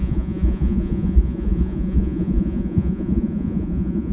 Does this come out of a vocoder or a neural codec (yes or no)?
yes